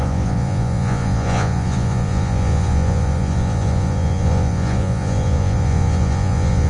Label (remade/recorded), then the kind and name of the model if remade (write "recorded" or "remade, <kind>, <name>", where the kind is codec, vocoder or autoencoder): remade, vocoder, Vocos